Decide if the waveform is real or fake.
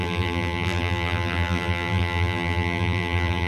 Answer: fake